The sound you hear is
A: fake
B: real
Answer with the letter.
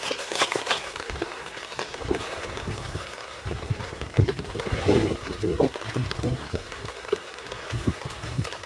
A